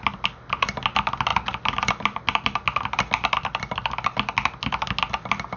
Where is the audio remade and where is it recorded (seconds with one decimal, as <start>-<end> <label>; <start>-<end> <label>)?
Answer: 0.0-5.6 recorded